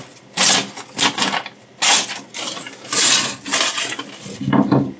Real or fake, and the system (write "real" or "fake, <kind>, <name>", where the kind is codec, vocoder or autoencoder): real